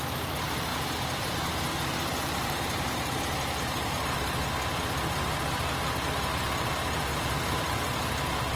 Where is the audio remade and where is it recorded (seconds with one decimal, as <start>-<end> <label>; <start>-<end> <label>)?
0.0-0.7 recorded; 0.7-4.0 remade; 4.0-7.1 recorded; 7.1-8.1 remade; 8.1-8.6 recorded